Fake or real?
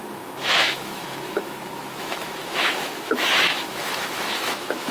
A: fake